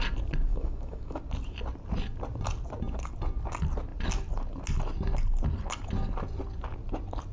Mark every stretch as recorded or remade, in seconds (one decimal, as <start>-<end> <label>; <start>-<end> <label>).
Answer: 0.0-0.5 recorded; 0.5-1.2 remade; 1.2-7.3 recorded